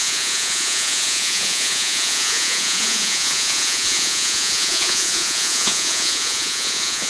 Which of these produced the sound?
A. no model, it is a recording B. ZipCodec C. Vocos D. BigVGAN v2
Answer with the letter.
C